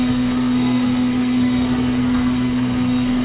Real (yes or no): no